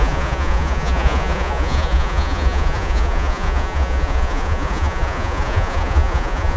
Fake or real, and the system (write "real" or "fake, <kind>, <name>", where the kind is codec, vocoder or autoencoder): fake, vocoder, Vocos